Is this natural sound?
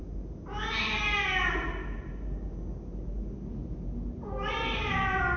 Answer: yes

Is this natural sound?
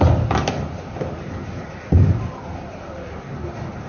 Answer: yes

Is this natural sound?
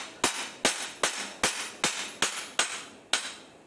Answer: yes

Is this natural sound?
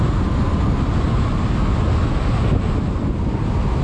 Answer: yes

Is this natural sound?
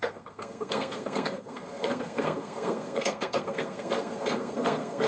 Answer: no